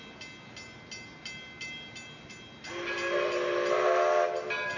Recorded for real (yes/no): yes